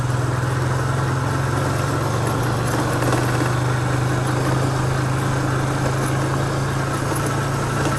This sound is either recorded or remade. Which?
recorded